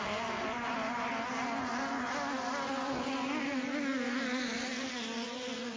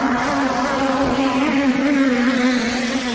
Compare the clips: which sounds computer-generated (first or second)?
second